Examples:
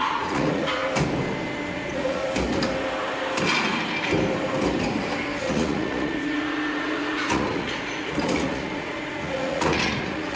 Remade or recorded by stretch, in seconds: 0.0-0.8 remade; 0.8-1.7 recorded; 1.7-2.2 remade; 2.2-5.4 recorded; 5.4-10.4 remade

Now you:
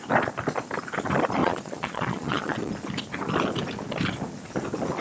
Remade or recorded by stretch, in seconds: 0.0-1.4 recorded; 1.4-2.7 remade; 2.7-5.0 recorded

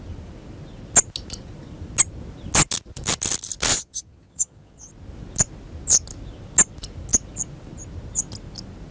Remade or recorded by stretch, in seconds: 0.0-3.7 recorded; 3.7-4.9 remade; 4.9-8.9 recorded

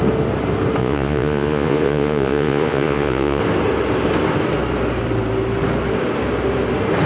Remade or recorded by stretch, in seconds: 0.0-0.8 recorded; 0.8-3.4 remade; 3.4-7.1 recorded

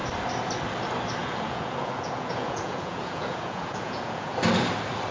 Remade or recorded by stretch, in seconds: 0.0-1.2 recorded; 1.2-4.3 remade; 4.3-5.1 recorded

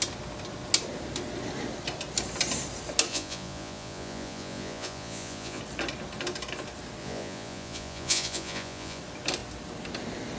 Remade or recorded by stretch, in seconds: 0.0-3.1 recorded; 3.1-5.6 remade; 5.6-7.0 recorded; 7.0-9.0 remade; 9.0-10.4 recorded

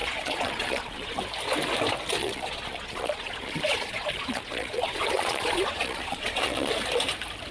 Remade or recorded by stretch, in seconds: 0.0-1.2 remade; 1.2-2.2 recorded; 2.2-6.7 remade; 6.7-7.5 recorded

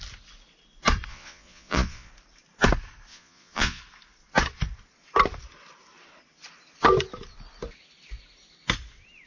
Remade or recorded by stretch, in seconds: 0.0-1.1 recorded; 1.1-2.1 remade; 2.1-3.1 recorded; 3.1-3.8 remade; 3.8-9.3 recorded